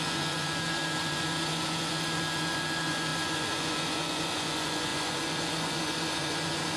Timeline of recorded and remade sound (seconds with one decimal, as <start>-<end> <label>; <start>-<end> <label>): 0.0-6.8 remade